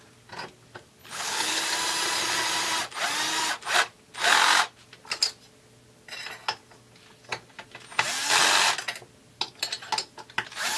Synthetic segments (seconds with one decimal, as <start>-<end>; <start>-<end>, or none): 1.0-1.6